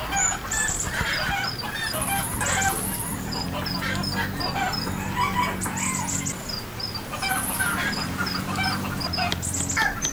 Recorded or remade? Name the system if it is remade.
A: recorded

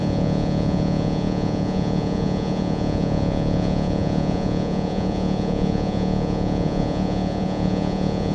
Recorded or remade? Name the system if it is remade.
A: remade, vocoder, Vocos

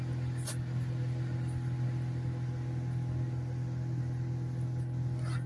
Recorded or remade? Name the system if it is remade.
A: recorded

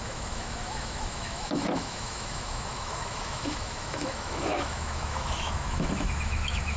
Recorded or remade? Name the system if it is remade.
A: remade, autoencoder, DAC-VAE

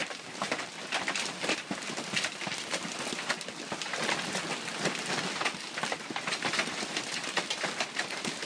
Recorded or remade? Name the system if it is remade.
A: recorded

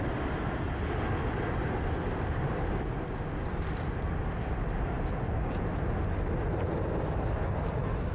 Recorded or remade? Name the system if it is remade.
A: recorded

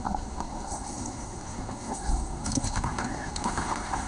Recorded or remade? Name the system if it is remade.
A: remade, codec, SNAC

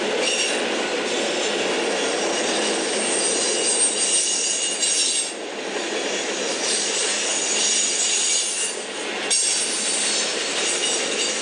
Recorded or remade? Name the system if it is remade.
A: recorded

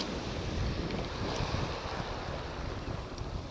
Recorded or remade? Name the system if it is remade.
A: recorded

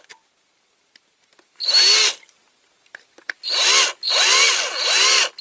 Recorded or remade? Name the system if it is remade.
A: recorded